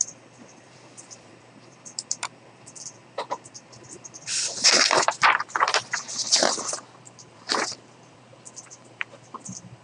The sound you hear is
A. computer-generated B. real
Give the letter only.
A